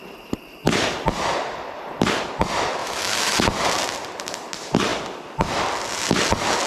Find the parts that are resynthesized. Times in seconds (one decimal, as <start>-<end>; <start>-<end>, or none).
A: 2.8-3.4